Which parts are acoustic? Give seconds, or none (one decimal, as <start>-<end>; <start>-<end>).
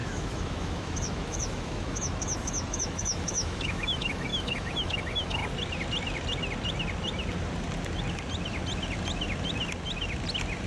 5.4-10.7